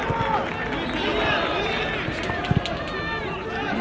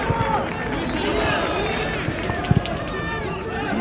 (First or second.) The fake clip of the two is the second